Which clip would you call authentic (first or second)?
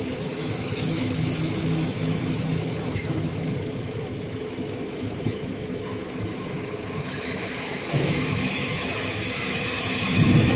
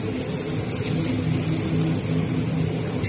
second